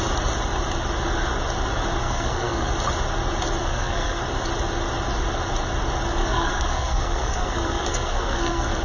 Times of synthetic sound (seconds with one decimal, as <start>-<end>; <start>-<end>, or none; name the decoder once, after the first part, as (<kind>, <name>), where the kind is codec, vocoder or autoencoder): 2.0-2.7 (codec, SNAC); 3.6-4.2; 6.2-8.8